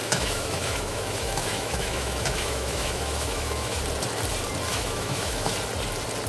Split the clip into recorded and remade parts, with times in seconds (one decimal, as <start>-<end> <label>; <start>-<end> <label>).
0.0-3.8 remade; 3.8-4.7 recorded; 4.7-5.5 remade; 5.5-6.3 recorded